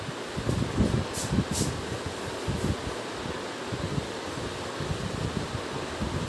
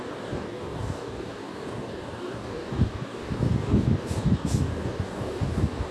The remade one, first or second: second